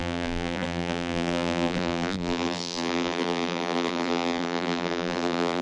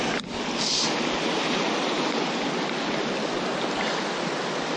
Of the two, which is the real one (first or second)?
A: second